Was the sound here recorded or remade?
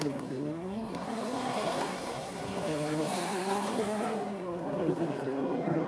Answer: remade